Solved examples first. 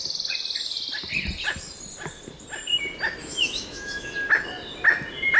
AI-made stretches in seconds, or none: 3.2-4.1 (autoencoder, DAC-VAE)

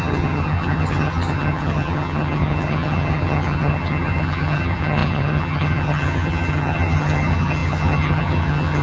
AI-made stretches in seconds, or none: 0.0-8.8 (vocoder, HiFi-GAN)